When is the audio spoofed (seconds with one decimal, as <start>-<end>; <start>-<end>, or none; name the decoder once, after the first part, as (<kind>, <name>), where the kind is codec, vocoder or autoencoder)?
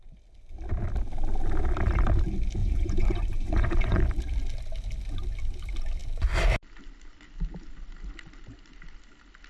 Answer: 2.6-4.0 (vocoder, Vocos)